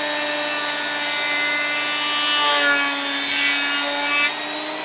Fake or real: real